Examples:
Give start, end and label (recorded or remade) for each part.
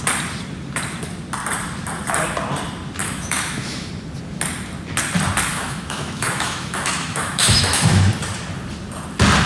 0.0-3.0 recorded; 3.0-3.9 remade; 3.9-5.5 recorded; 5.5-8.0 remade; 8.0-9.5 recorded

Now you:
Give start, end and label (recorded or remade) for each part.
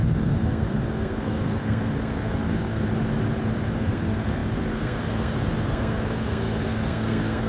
0.0-2.9 remade; 2.9-3.7 recorded; 3.7-7.5 remade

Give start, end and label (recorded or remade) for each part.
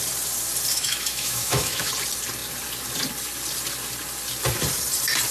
0.0-0.7 recorded; 0.7-1.9 remade; 1.9-5.3 recorded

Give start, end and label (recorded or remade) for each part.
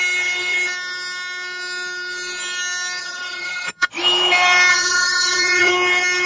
0.0-3.0 recorded; 3.0-3.9 remade; 3.9-4.7 recorded; 4.7-5.7 remade; 5.7-6.3 recorded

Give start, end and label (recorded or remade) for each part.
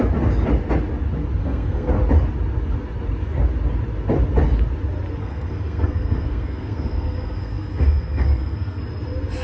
0.0-1.4 recorded; 1.4-1.9 remade; 1.9-5.2 recorded; 5.2-8.8 remade; 8.8-9.4 recorded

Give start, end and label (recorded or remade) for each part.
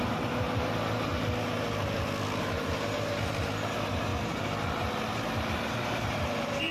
0.0-1.1 remade; 1.1-2.4 recorded; 2.4-4.1 remade; 4.1-5.5 recorded; 5.5-6.7 remade